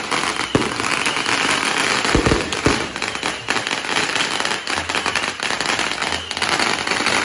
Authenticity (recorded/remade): recorded